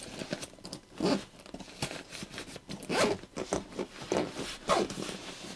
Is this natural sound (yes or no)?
yes